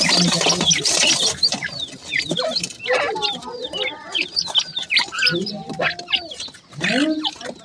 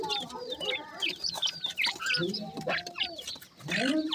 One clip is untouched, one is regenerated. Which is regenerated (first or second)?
second